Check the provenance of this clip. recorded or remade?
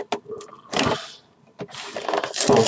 recorded